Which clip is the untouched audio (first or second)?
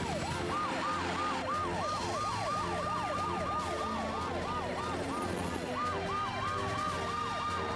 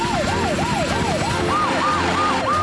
first